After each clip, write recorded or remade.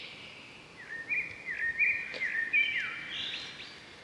recorded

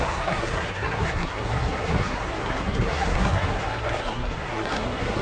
remade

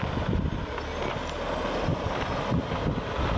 recorded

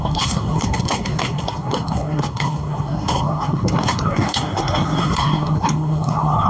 remade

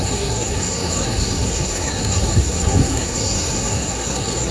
remade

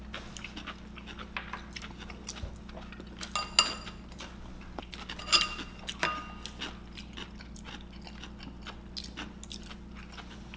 recorded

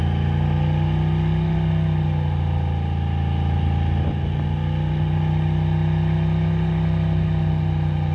recorded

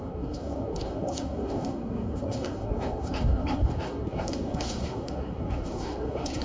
remade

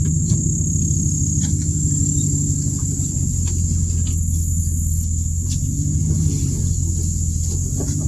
recorded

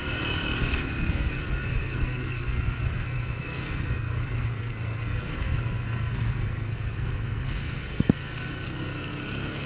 remade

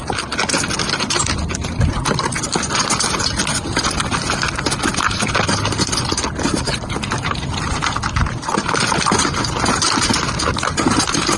recorded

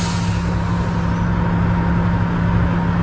recorded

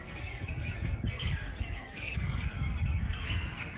remade